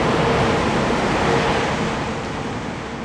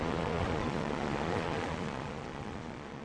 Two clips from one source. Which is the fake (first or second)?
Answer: second